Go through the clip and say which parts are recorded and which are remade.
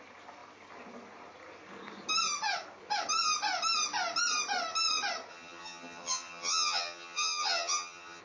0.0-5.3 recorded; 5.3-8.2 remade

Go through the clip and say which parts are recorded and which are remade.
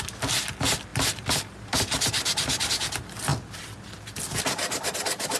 0.0-0.9 recorded; 0.9-2.7 remade; 2.7-3.3 recorded; 3.3-4.4 remade; 4.4-5.4 recorded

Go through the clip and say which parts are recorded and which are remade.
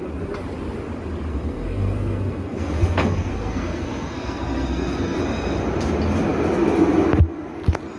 0.0-1.3 recorded; 1.3-5.2 remade; 5.2-8.0 recorded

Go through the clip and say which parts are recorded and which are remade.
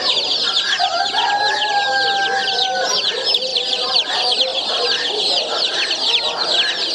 0.0-3.5 recorded; 3.5-4.1 remade; 4.1-4.5 recorded; 4.5-5.1 remade; 5.1-6.9 recorded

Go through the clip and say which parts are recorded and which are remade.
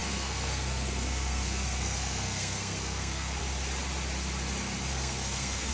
0.0-3.4 remade; 3.4-4.9 recorded; 4.9-5.7 remade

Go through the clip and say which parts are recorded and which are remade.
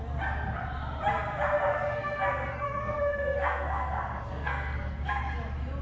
0.0-1.7 recorded; 1.7-5.2 remade; 5.2-5.8 recorded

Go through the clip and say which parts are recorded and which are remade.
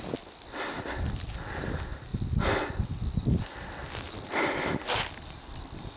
0.0-6.0 recorded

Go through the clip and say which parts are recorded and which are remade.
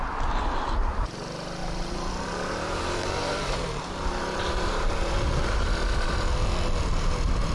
0.0-1.6 recorded; 1.6-5.7 remade; 5.7-7.5 recorded